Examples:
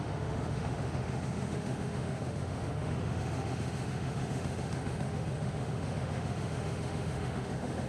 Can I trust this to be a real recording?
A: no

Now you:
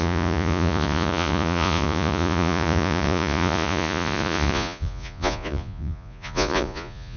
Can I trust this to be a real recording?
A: no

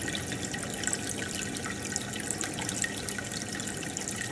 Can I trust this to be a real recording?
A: yes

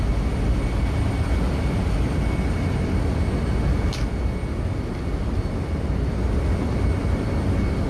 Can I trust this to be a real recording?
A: yes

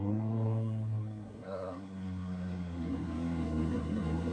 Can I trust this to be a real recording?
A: no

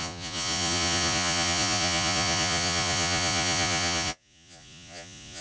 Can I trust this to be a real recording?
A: no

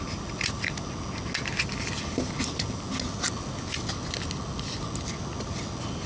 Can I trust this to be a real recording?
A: yes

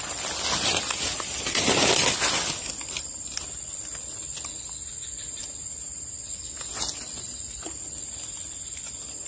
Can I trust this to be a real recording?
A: yes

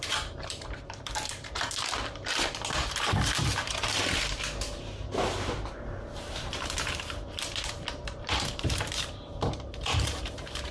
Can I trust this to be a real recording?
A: no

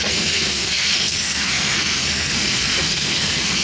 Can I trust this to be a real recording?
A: no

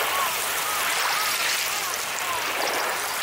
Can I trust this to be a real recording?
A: yes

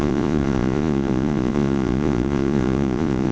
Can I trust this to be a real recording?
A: no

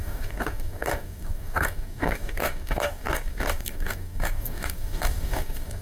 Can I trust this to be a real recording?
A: no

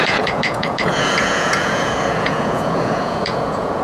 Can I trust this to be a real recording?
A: no